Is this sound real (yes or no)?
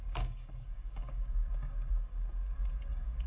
no